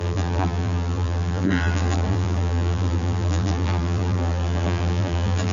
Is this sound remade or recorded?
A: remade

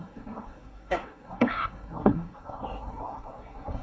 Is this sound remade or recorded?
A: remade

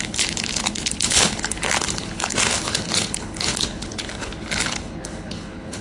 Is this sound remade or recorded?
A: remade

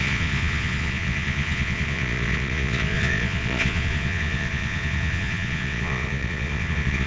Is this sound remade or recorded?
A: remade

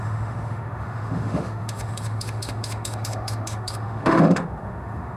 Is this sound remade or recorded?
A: remade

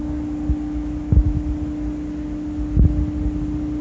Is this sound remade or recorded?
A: recorded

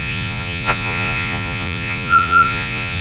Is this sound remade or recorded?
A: remade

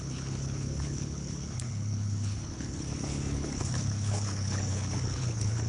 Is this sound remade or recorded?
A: remade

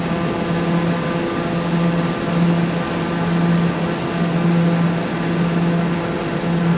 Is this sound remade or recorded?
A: recorded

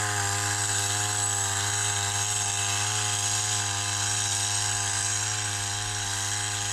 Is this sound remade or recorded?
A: recorded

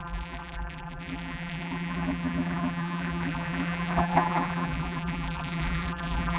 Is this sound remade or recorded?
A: remade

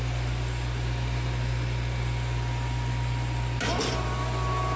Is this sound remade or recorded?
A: recorded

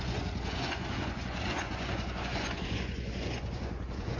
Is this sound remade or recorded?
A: remade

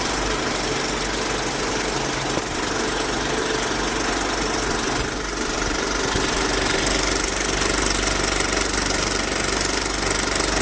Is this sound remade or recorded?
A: recorded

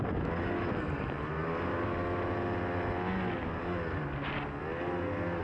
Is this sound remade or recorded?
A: recorded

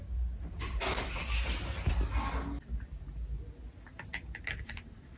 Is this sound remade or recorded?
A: recorded